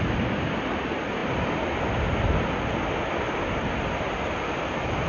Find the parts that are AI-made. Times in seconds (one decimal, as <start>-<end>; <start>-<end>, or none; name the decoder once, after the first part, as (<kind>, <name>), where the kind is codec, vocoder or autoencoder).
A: none